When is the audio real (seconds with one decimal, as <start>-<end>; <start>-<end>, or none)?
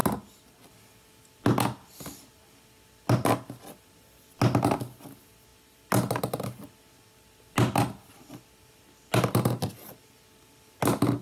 0.0-11.2